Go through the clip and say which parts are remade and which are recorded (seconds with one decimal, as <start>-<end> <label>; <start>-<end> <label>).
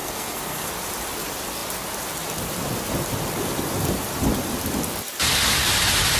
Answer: 0.0-0.7 remade; 0.7-6.2 recorded